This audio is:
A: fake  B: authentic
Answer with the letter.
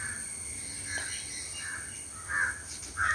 B